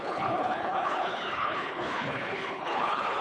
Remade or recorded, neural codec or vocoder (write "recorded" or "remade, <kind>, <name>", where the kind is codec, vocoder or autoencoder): remade, codec, HILCodec